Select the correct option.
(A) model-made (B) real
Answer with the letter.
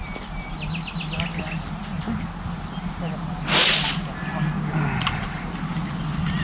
B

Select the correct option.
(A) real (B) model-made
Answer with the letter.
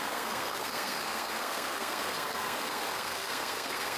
B